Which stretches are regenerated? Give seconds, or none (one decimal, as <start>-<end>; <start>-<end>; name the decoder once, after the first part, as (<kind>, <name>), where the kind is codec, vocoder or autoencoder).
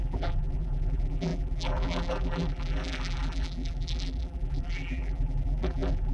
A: 0.0-6.1 (vocoder, BigVGAN v2)